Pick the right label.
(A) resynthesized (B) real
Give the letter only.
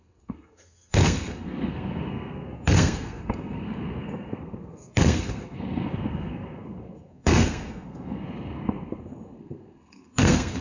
A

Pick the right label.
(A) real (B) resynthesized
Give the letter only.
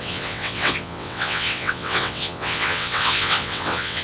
B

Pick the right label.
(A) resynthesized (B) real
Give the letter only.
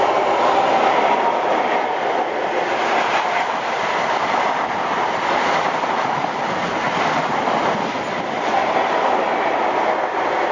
B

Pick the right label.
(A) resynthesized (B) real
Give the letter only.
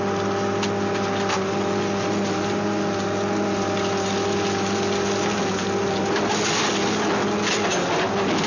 B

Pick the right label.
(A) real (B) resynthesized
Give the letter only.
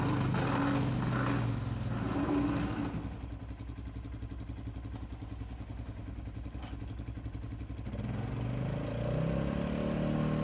A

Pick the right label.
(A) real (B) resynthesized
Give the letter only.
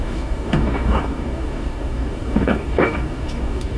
B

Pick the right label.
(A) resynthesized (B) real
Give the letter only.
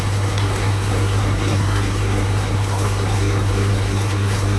A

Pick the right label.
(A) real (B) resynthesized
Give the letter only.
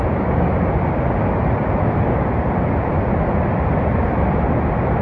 A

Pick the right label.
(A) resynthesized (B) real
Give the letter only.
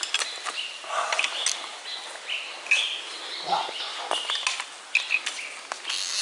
B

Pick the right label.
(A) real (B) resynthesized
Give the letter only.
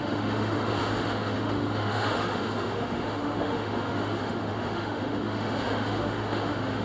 B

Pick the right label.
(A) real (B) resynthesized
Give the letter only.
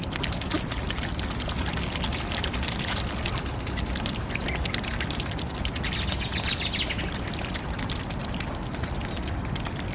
A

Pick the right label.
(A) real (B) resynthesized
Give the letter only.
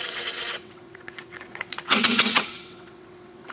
B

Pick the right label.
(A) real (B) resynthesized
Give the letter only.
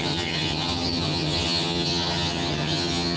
B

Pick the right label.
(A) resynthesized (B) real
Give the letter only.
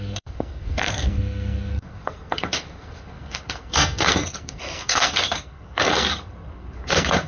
A